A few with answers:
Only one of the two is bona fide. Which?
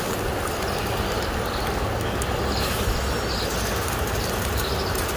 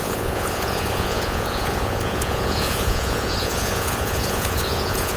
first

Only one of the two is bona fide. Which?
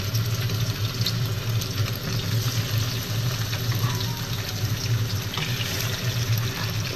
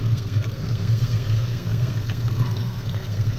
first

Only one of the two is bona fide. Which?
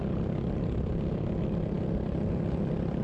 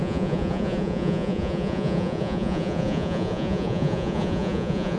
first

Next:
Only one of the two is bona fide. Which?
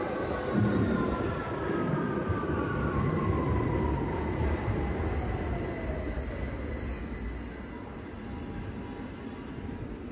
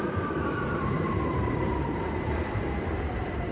first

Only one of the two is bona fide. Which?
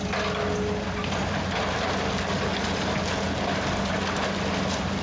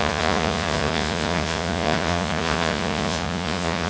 first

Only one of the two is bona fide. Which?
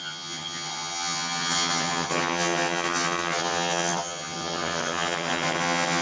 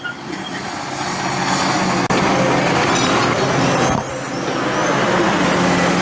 second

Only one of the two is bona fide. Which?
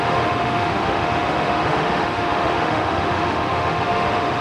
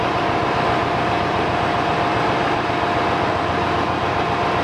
second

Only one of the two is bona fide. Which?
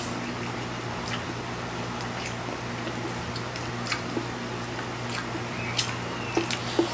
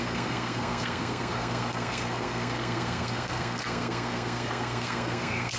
first